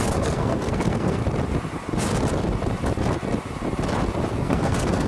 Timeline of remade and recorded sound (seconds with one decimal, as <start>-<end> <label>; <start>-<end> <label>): 0.0-1.2 remade; 1.2-4.3 recorded; 4.3-5.1 remade